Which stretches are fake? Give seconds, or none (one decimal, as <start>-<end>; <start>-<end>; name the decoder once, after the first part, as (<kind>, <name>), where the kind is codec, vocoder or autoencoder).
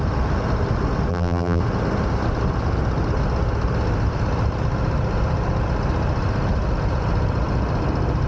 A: 1.1-1.6 (vocoder, BigVGAN v2)